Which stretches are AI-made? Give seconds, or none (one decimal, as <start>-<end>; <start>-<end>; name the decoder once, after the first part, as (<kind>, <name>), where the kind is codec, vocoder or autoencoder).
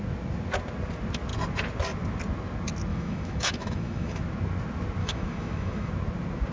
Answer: 2.9-4.2 (autoencoder, DAC-VAE); 5.0-5.9